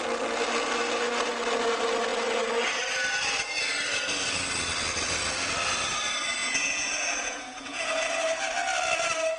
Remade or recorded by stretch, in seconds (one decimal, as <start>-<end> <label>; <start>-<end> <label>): 0.0-6.4 recorded; 6.4-8.1 remade; 8.1-9.4 recorded